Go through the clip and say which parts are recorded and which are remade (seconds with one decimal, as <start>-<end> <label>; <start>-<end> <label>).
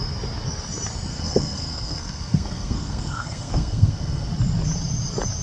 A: 0.0-1.1 recorded; 1.1-4.3 remade; 4.3-5.4 recorded